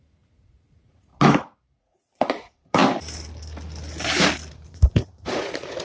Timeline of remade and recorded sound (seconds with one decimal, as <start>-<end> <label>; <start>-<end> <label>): 0.0-1.1 remade; 1.1-1.8 recorded; 1.8-2.8 remade; 2.8-4.7 recorded; 4.7-5.8 remade

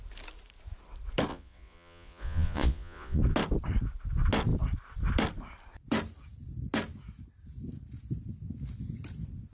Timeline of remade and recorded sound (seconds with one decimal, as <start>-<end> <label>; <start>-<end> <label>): 0.0-1.3 recorded; 1.3-3.2 remade; 3.2-9.5 recorded

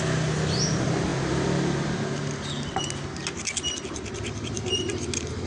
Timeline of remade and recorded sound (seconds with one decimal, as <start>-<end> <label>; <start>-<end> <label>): 0.0-5.5 recorded

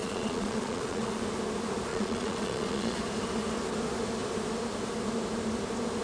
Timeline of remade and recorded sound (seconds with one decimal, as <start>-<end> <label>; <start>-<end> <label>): 0.0-1.2 remade; 1.2-1.9 recorded; 1.9-3.0 remade; 3.0-6.0 recorded